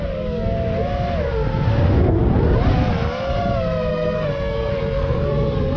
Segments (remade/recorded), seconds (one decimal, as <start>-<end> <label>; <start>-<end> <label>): 0.0-1.5 recorded; 1.5-2.3 remade; 2.3-3.9 recorded; 3.9-5.8 remade